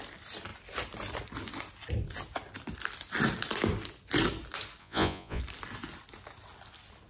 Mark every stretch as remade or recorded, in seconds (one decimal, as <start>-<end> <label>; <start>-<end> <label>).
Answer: 0.0-4.8 recorded; 4.8-5.4 remade; 5.4-7.1 recorded